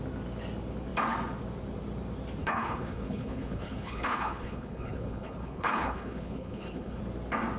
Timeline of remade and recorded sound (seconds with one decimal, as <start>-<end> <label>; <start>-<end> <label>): 0.0-2.4 recorded; 2.4-7.0 remade; 7.0-7.6 recorded